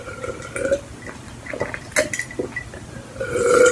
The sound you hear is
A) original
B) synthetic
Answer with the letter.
A